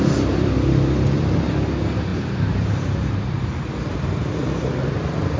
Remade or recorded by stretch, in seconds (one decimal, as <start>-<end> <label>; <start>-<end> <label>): 0.0-2.1 recorded; 2.1-3.2 remade; 3.2-5.4 recorded